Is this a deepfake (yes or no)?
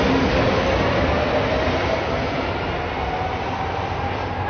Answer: no